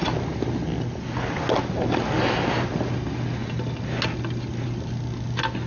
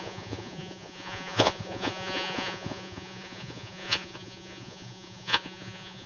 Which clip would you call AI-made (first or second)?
second